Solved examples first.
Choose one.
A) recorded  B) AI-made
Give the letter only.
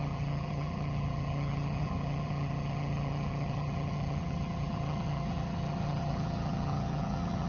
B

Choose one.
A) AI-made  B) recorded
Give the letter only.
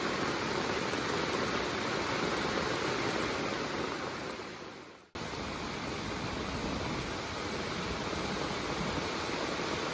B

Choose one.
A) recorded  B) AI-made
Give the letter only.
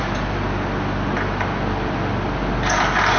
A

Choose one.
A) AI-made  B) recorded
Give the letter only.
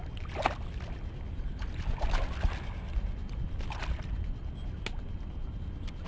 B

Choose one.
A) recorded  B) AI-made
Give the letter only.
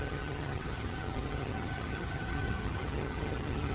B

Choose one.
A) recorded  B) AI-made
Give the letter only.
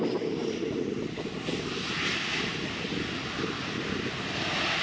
A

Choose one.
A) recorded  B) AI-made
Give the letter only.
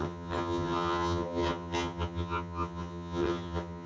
B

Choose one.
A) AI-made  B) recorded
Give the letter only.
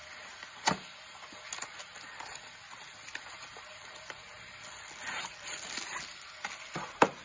B